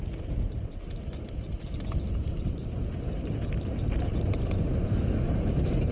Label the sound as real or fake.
fake